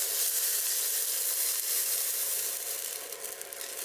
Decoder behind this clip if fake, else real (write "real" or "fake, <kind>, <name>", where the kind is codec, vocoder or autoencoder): real